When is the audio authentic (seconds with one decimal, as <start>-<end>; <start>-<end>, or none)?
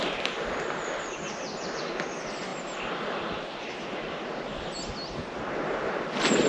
0.0-6.5